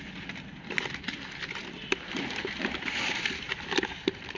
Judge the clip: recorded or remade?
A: remade